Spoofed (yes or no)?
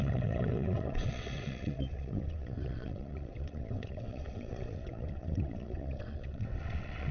yes